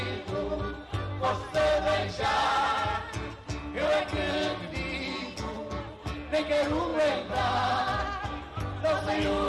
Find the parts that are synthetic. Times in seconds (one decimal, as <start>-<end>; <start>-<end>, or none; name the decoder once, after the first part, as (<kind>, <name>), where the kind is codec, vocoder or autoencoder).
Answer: none